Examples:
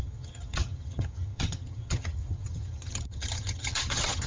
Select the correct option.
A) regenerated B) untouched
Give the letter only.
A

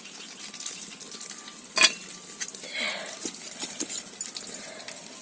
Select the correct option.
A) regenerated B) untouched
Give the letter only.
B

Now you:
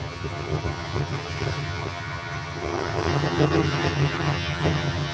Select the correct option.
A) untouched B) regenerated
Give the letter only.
B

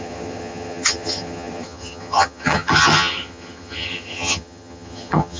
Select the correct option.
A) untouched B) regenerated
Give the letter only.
B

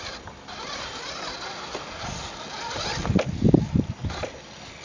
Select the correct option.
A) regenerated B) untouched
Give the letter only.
B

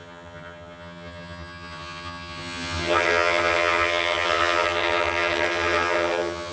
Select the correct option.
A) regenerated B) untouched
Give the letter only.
A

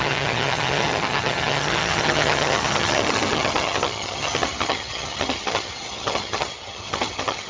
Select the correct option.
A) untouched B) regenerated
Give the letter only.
B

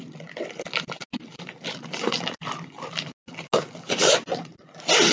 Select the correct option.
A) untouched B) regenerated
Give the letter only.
A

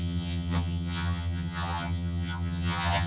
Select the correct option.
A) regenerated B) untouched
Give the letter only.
A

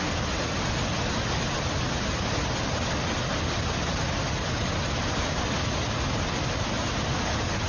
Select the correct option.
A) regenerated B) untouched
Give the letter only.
B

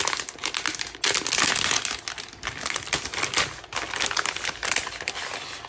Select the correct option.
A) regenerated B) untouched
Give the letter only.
B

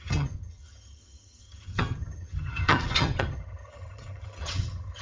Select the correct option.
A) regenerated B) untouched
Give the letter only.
A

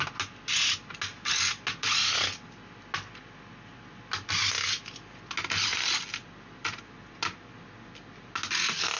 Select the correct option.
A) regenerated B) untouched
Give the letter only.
B